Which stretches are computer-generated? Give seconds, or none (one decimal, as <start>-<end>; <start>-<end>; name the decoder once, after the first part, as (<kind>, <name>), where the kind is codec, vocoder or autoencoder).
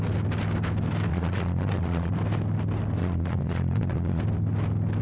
1.1-2.1 (vocoder, Vocos); 3.0-4.2